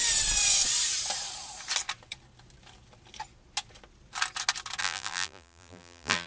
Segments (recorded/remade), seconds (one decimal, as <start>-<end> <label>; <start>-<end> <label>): 0.0-4.8 recorded; 4.8-6.3 remade